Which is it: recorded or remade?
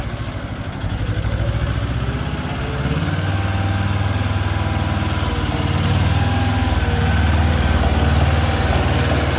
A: recorded